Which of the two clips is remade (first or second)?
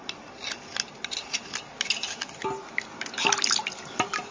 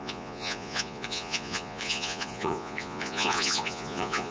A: second